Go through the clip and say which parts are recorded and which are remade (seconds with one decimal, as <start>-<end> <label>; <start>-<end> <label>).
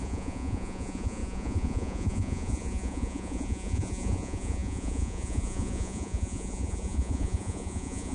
0.0-8.1 remade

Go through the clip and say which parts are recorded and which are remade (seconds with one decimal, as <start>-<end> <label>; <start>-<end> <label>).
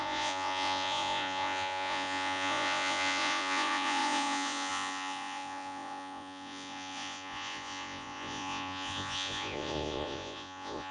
0.0-10.9 remade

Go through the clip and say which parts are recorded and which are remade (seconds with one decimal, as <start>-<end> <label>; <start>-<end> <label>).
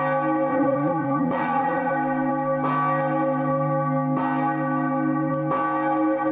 0.0-0.5 recorded; 0.5-1.9 remade; 1.9-6.3 recorded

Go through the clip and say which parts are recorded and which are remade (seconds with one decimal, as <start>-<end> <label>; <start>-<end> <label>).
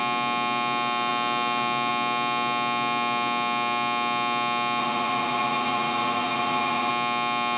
0.0-4.8 recorded; 4.8-6.9 remade; 6.9-7.6 recorded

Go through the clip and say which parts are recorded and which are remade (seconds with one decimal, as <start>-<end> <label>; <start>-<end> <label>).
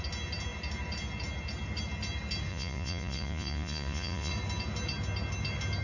0.0-2.5 recorded; 2.5-4.3 remade; 4.3-5.8 recorded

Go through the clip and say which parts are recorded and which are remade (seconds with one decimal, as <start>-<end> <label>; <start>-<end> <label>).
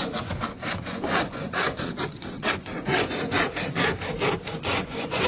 0.0-3.2 remade; 3.2-4.4 recorded; 4.4-5.3 remade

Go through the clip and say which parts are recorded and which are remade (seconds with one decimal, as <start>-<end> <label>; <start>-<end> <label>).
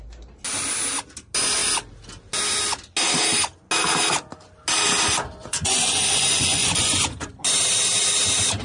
0.0-5.4 recorded; 5.4-7.3 remade; 7.3-8.6 recorded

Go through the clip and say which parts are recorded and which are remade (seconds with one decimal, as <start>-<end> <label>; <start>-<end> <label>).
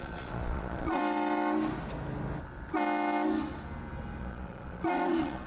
0.0-1.0 remade; 1.0-4.2 recorded; 4.2-5.5 remade